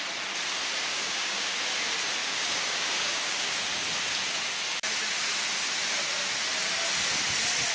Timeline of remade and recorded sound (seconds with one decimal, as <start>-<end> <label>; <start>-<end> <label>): 0.0-0.9 recorded; 0.9-1.6 remade; 1.6-2.2 recorded; 2.2-3.6 remade; 3.6-7.7 recorded